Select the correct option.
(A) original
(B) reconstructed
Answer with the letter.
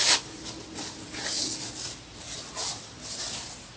A